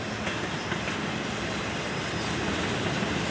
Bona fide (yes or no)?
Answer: yes